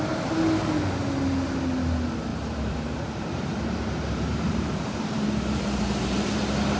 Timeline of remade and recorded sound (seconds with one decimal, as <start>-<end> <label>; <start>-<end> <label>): 0.0-2.3 recorded; 2.3-6.8 remade